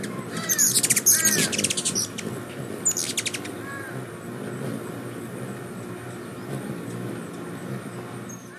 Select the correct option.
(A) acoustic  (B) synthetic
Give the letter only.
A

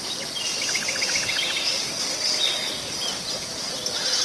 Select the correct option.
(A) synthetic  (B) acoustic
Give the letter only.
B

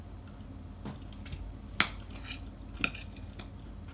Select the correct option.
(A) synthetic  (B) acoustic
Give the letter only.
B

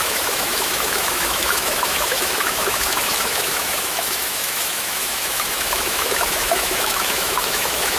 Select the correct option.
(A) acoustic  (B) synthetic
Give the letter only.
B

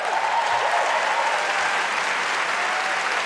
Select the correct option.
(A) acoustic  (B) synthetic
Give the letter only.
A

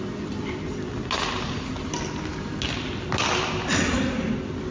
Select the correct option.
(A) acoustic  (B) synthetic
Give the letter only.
A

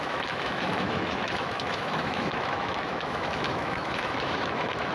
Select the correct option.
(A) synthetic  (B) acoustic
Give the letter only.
A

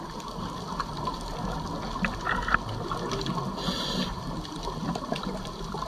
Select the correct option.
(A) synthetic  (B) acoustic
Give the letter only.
B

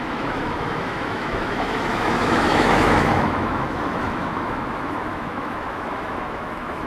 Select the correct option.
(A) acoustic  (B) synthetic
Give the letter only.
B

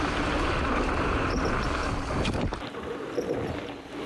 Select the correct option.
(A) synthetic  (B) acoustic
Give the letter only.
B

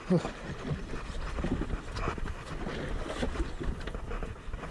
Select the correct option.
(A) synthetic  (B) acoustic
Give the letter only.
B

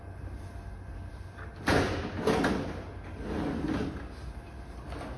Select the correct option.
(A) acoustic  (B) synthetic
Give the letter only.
A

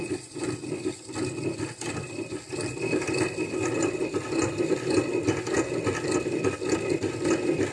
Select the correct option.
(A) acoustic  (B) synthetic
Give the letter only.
A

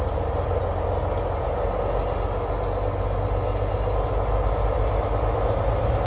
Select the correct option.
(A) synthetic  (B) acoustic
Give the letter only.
B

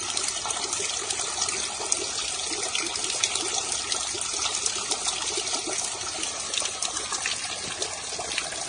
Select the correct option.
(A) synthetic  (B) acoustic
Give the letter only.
B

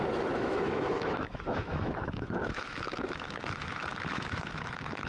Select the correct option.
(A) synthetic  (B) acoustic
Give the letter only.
A